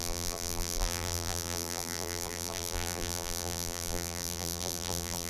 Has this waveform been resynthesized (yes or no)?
yes